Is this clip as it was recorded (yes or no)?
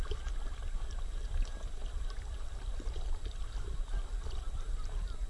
no